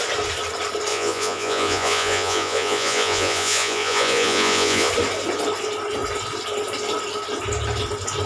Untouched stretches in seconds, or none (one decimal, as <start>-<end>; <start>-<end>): 0.0-0.9; 4.9-8.3